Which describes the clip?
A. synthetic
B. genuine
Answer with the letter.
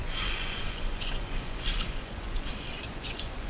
A